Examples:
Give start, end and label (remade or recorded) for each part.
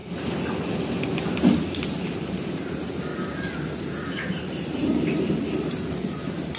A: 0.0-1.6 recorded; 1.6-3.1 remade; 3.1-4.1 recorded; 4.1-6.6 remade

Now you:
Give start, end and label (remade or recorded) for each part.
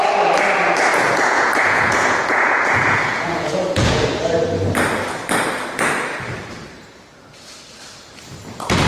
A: 0.0-0.9 recorded; 0.9-4.2 remade; 4.2-8.9 recorded